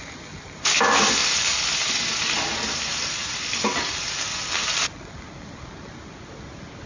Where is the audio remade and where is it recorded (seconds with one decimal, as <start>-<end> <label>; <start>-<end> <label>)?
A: 0.0-6.9 recorded